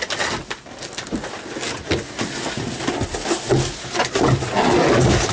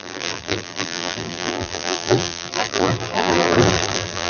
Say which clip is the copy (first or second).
second